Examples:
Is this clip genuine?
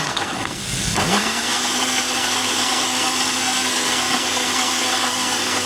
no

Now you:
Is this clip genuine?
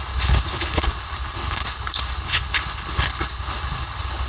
no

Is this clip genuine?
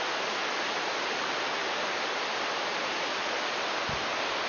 yes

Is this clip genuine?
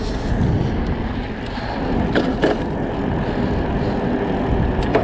yes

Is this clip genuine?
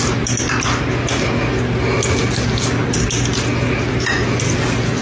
yes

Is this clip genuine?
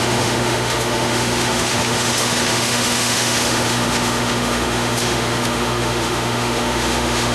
no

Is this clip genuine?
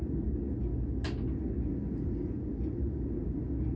yes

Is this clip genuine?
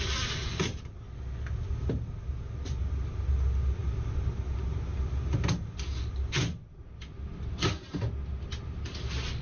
yes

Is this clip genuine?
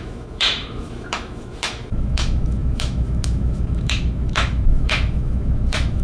no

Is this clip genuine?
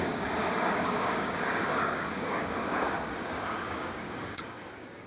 no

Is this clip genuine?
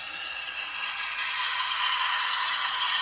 no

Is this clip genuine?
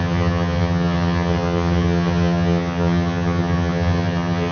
no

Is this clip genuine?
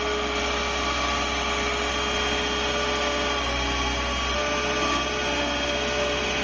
yes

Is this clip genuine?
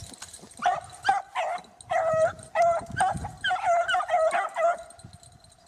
yes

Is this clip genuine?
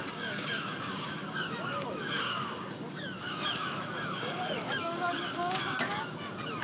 no